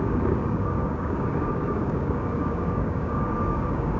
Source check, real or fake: fake